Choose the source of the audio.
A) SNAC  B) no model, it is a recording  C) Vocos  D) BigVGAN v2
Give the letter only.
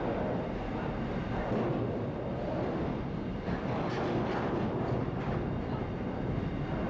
B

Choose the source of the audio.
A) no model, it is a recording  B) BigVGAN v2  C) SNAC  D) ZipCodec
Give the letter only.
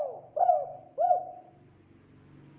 A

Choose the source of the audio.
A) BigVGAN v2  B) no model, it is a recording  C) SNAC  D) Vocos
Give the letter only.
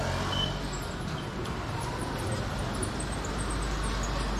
B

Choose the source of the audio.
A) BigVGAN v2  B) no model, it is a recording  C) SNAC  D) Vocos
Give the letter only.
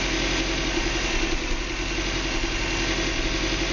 B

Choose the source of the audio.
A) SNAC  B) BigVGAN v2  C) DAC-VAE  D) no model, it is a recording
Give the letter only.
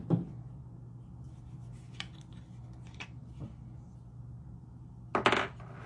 D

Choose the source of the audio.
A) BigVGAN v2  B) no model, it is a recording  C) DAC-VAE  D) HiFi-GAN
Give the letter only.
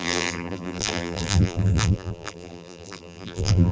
A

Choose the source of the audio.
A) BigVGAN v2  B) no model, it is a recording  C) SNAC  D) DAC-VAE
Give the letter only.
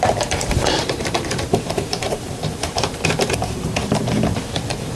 A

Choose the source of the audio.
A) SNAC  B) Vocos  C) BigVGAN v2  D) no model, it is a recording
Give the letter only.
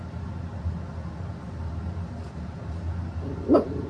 D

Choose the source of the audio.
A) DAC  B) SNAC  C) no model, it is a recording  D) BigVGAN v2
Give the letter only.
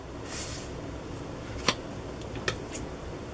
C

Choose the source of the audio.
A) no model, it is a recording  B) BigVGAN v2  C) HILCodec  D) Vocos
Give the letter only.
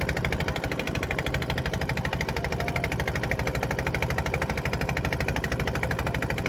A